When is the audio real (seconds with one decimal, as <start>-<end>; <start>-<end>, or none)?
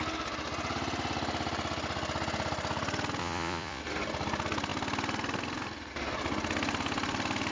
0.0-3.2; 3.8-7.5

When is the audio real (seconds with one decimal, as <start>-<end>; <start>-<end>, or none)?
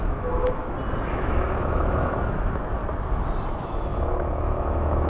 0.6-1.1; 2.8-3.5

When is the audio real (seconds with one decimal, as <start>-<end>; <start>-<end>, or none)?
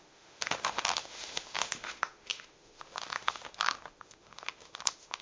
none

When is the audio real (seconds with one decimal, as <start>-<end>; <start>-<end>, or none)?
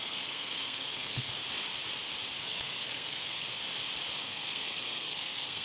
1.4-2.4; 3.6-4.2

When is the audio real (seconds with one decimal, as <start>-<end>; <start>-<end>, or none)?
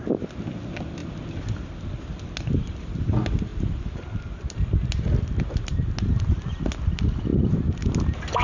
0.0-8.4